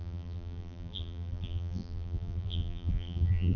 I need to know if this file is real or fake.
fake